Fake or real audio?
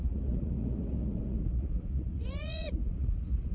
fake